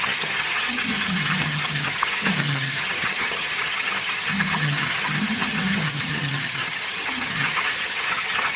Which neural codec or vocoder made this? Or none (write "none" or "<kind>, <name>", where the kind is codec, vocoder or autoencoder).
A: vocoder, HiFi-GAN